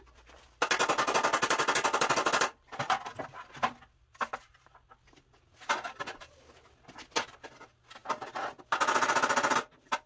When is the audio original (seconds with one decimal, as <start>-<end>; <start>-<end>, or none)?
0.0-10.1